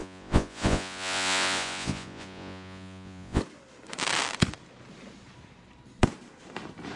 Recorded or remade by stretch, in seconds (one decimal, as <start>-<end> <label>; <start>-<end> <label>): 0.0-3.4 remade; 3.4-7.0 recorded